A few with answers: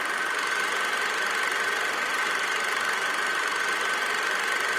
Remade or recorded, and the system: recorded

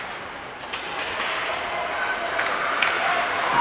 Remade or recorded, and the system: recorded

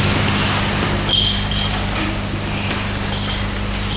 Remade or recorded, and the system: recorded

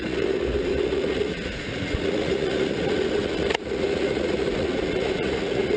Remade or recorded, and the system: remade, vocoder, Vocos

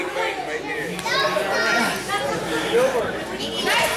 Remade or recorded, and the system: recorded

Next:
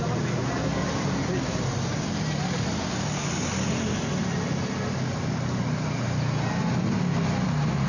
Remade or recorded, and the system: recorded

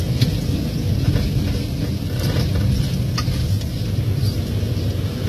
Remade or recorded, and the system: recorded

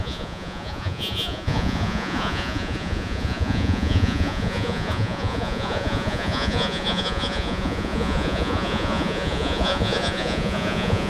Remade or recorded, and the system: remade, vocoder, Vocos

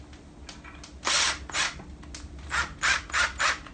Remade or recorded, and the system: recorded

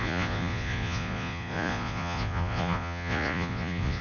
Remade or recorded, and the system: remade, vocoder, Vocos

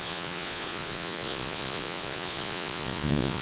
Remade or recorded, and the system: remade, vocoder, Vocos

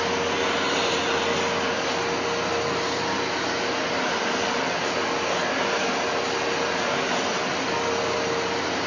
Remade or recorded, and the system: recorded